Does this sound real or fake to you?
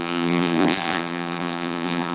fake